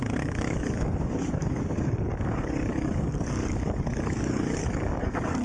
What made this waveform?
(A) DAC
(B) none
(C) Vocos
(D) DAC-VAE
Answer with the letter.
A